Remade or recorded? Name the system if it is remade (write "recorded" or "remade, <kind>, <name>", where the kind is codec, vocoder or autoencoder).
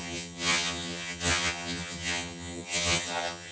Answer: remade, vocoder, HiFi-GAN